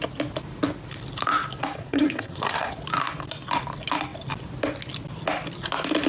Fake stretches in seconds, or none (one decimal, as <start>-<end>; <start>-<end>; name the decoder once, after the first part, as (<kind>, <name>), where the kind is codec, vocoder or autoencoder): 1.8-2.7 (codec, SNAC)